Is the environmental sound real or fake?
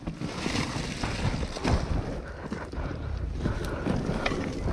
real